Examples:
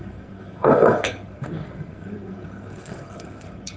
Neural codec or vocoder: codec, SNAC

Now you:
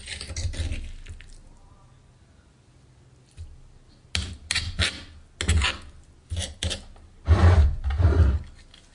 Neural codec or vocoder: none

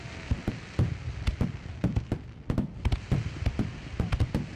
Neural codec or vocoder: none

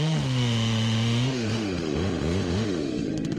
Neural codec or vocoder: autoencoder, DAC-VAE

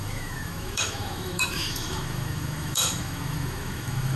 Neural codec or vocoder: autoencoder, DAC-VAE